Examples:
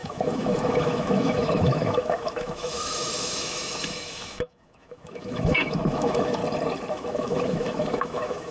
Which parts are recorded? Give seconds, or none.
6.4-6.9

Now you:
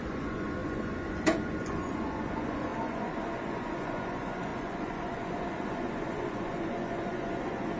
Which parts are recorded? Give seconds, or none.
none

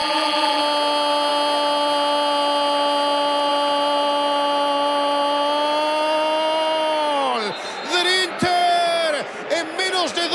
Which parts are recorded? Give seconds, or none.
0.6-10.3

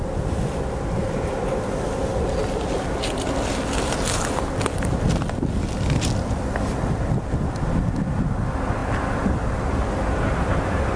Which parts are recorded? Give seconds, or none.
0.0-11.0

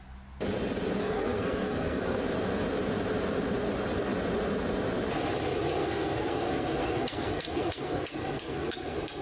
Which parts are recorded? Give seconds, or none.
0.0-1.0; 2.2-5.8

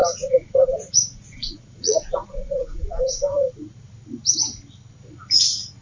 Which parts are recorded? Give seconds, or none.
3.5-5.8

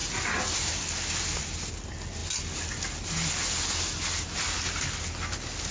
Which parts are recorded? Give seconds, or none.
0.0-5.7

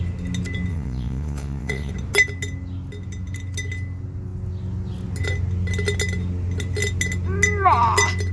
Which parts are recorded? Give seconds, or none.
0.0-0.7; 1.9-8.3